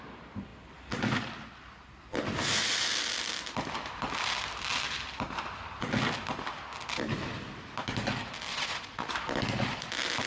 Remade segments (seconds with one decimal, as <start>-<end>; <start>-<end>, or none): 8.5-9.1